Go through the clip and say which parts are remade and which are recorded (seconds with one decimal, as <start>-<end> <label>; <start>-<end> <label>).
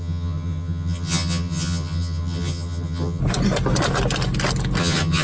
0.0-3.2 remade; 3.2-4.8 recorded; 4.8-5.2 remade